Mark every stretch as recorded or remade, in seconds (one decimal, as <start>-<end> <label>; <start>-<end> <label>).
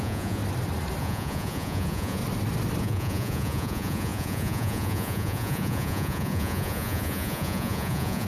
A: 0.0-0.4 remade; 0.4-1.0 recorded; 1.0-2.2 remade; 2.2-2.8 recorded; 2.8-8.3 remade